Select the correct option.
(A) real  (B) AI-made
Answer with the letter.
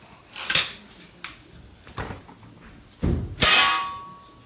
A